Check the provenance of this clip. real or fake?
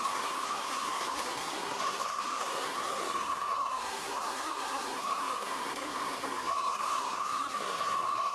fake